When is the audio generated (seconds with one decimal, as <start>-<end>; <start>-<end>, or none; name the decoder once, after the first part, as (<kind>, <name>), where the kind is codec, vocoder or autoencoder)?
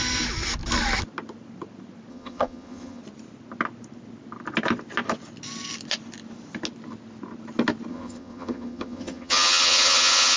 2.1-3.0 (vocoder, HiFi-GAN); 7.9-10.4